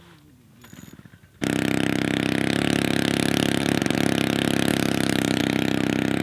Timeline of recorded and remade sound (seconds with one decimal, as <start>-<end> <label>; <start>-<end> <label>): 0.0-4.7 recorded; 4.7-5.4 remade; 5.4-6.2 recorded